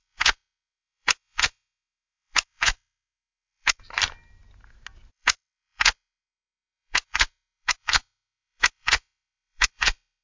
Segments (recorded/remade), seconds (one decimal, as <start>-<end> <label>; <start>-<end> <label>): 0.0-3.8 remade; 3.8-5.1 recorded; 5.1-10.2 remade